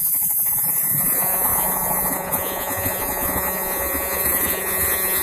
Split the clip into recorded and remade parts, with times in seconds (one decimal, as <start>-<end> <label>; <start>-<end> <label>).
0.0-5.2 remade